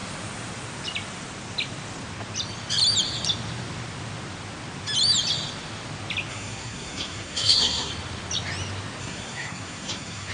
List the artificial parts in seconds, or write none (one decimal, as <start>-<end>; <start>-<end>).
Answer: 6.3-7.9; 9.0-10.3